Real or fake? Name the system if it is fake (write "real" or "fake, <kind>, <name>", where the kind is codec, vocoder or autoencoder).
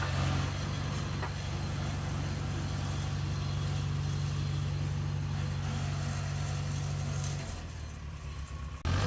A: real